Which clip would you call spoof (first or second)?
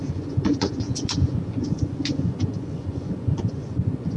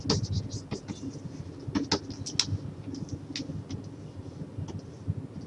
first